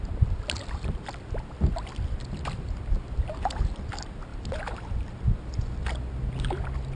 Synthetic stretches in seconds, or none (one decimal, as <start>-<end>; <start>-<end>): none